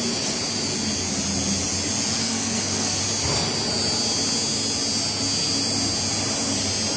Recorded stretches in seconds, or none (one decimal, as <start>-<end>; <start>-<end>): 0.0-2.2; 3.0-7.0